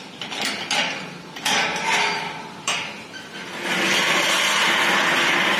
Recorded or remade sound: recorded